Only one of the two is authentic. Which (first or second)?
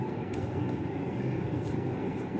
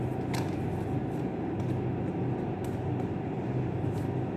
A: second